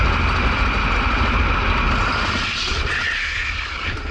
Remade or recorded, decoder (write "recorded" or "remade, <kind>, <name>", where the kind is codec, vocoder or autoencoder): recorded